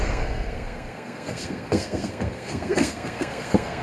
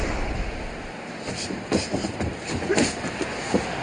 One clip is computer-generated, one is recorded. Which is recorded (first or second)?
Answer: second